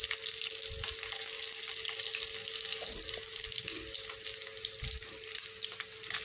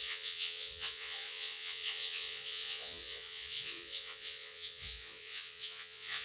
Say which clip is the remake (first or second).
second